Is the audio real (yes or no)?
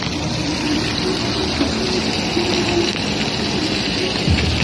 yes